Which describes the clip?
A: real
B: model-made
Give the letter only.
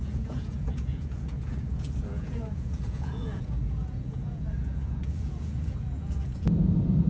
B